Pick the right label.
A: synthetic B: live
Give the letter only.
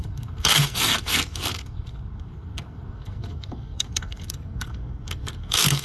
A